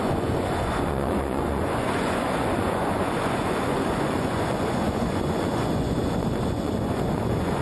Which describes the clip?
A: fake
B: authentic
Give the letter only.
A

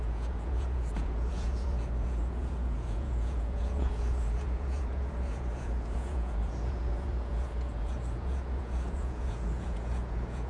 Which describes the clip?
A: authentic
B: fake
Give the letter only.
B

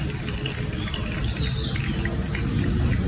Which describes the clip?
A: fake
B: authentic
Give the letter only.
B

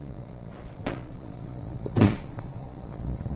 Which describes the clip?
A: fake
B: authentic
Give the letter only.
A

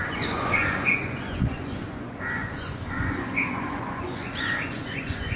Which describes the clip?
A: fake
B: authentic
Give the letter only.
A